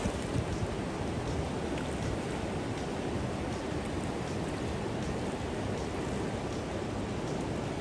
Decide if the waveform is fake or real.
real